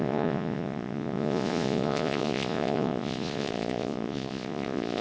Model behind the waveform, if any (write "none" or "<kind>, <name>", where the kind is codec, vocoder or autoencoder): vocoder, Vocos